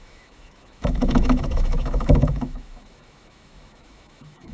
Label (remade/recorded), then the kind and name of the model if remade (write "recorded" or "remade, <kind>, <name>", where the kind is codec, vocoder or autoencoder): remade, autoencoder, DAC-VAE